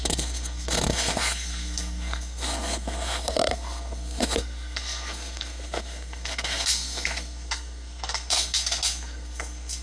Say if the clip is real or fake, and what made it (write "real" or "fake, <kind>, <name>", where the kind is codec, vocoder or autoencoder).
fake, codec, SNAC